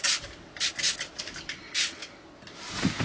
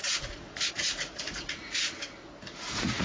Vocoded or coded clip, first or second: second